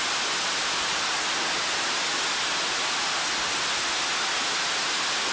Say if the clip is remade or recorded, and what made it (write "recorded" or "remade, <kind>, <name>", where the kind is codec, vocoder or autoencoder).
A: recorded